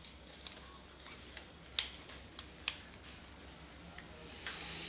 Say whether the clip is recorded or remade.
recorded